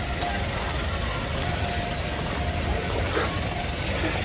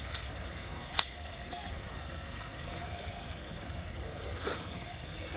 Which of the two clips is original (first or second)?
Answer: first